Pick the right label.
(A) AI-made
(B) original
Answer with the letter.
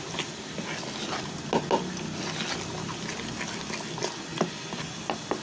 B